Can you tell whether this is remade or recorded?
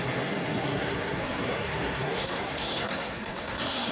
remade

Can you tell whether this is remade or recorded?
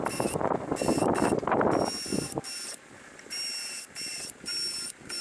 recorded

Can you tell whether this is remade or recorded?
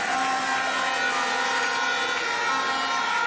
recorded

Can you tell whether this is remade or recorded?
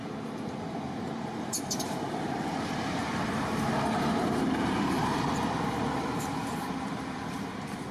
remade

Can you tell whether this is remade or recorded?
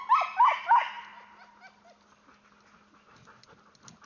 recorded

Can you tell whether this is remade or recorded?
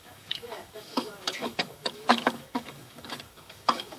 remade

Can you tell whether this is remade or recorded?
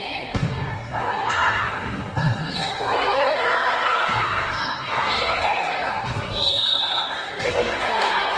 remade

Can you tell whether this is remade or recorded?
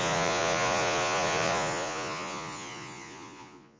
remade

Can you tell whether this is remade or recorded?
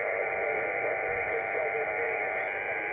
recorded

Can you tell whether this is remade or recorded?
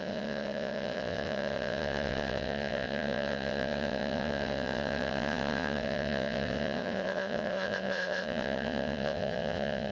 remade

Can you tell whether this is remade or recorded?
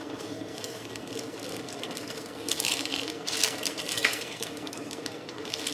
remade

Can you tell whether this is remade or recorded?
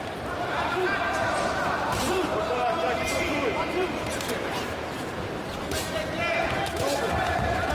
remade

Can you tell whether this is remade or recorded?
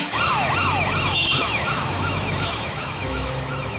remade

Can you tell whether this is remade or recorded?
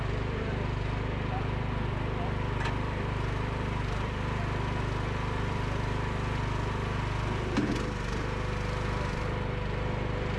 recorded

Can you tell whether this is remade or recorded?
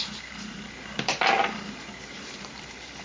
remade